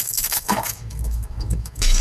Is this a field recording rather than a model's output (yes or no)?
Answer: no